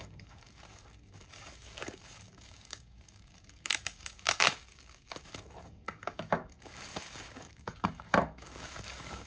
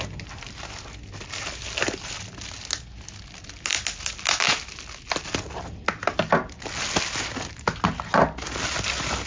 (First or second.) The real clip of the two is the second